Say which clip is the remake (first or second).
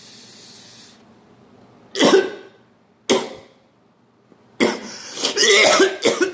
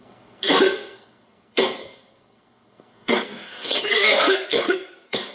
second